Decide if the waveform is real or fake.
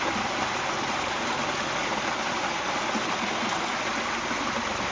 real